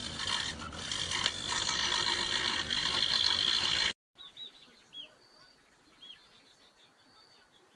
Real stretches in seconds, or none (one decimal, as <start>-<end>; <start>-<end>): 0.0-7.8